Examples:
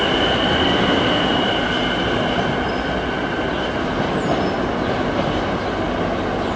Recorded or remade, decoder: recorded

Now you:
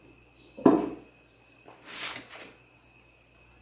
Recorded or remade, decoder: recorded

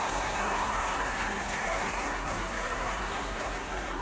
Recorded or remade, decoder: remade, codec, SNAC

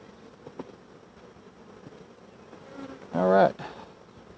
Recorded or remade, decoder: recorded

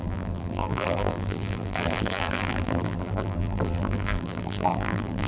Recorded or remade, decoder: remade, vocoder, BigVGAN v2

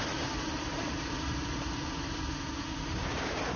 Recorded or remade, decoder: remade, vocoder, BigVGAN v2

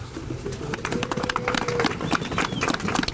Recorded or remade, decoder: recorded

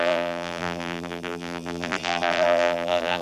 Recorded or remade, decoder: remade, vocoder, BigVGAN v2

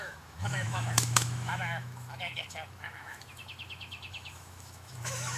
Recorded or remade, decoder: remade, autoencoder, DAC-VAE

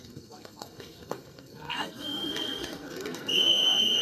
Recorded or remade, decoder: remade, codec, SNAC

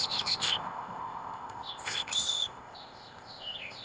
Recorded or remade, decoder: remade, codec, ZipCodec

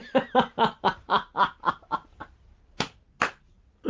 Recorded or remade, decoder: recorded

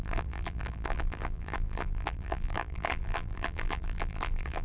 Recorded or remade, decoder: remade, vocoder, BigVGAN v2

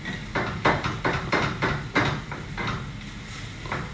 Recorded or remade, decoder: recorded